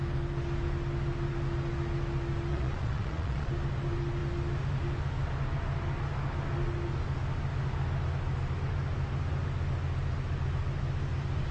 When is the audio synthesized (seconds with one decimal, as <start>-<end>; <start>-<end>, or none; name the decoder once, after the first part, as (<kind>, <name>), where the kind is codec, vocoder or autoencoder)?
2.5-3.5 (vocoder, Vocos)